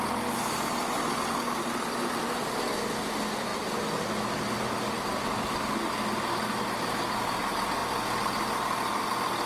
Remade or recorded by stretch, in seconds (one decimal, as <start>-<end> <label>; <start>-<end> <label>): 0.0-9.5 recorded